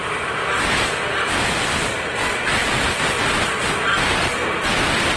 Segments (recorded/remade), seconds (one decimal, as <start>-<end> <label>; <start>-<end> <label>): 0.0-5.2 recorded